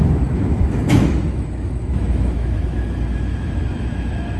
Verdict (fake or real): fake